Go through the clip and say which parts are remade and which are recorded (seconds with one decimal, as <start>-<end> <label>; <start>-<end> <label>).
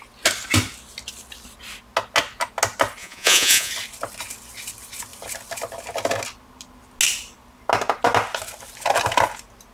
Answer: 0.0-3.0 recorded; 3.0-3.7 remade; 3.7-9.7 recorded